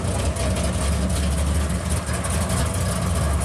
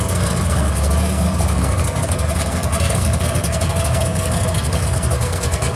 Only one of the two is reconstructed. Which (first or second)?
second